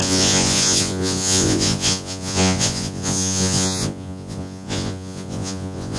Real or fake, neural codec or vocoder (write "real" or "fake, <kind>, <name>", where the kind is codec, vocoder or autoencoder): fake, vocoder, Vocos